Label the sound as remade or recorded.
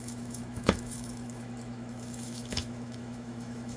remade